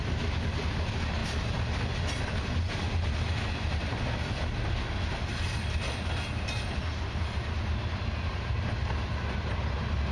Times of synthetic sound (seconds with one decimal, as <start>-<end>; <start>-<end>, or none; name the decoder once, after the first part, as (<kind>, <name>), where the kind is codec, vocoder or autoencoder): none